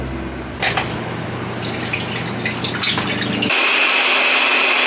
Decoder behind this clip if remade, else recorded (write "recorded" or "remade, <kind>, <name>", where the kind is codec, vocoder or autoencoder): recorded